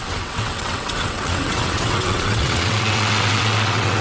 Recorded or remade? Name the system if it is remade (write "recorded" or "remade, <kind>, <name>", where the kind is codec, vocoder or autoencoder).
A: remade, vocoder, WaveNeXt